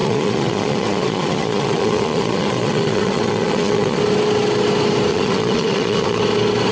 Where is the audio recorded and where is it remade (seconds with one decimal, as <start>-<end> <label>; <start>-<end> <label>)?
0.0-4.0 remade; 4.0-5.1 recorded; 5.1-6.2 remade; 6.2-6.7 recorded